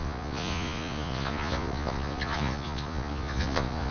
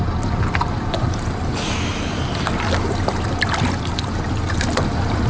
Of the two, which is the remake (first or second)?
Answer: first